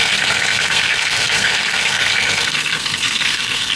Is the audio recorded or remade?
remade